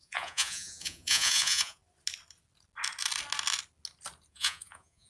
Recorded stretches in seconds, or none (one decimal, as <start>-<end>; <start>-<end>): 1.8-4.3